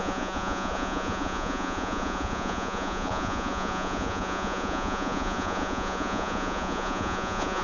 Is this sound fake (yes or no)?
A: yes